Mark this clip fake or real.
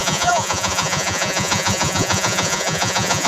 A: fake